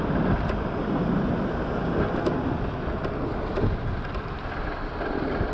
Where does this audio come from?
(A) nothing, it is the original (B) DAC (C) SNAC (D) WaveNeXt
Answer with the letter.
A